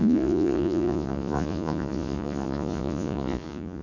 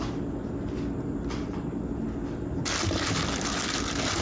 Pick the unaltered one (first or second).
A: second